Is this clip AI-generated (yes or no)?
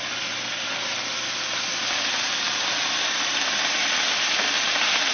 no